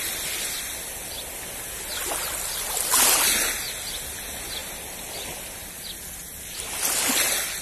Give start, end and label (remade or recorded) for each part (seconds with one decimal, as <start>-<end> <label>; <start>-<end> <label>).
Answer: 0.0-7.6 recorded